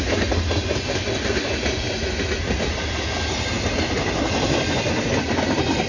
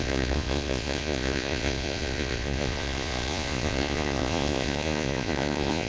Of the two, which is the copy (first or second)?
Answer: second